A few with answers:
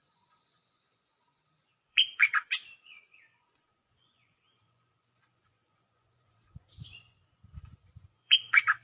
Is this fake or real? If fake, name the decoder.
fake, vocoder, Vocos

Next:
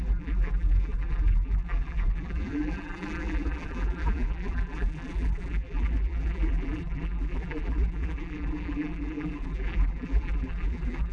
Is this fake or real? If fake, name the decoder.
fake, vocoder, BigVGAN v2